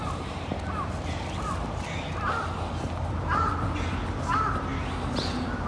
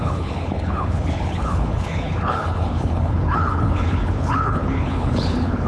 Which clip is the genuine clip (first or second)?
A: first